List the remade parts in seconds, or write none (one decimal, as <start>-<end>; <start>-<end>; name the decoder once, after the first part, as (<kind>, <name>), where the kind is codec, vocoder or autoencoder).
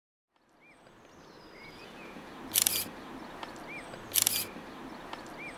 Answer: 1.6-2.3 (vocoder, Vocos)